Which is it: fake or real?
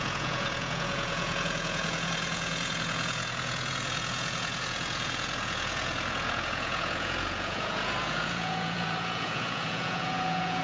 fake